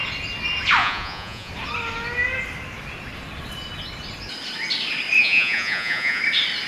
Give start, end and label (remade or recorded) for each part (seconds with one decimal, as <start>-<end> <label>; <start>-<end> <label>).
0.0-0.8 recorded; 0.8-1.5 remade; 1.5-5.2 recorded; 5.2-6.2 remade; 6.2-6.7 recorded